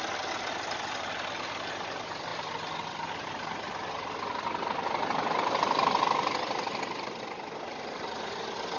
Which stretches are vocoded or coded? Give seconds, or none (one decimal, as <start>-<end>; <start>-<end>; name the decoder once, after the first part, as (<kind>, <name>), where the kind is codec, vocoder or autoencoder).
none